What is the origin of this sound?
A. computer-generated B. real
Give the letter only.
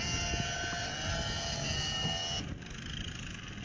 B